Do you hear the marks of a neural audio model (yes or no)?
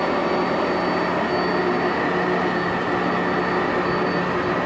no